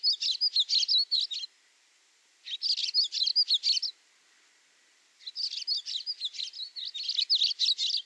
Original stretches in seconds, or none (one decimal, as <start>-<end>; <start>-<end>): 0.0-8.1